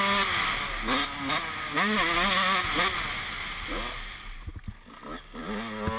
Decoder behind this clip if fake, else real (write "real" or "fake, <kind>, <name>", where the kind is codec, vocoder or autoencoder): real